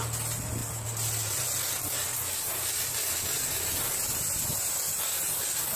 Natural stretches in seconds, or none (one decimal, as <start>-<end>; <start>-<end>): 0.0-2.1